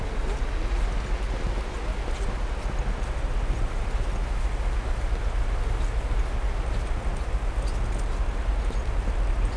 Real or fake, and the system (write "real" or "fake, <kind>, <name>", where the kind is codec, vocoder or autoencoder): real